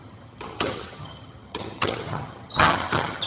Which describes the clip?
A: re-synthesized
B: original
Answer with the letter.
A